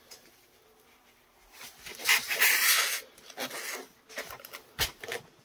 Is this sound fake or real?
real